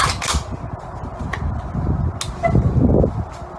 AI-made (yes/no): no